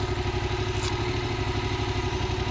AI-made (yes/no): no